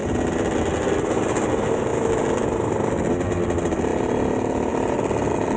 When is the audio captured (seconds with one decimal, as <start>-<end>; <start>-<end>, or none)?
0.0-5.6